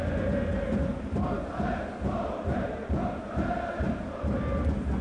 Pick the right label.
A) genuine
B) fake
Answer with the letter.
A